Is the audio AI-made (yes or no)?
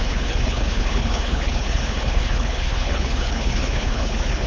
yes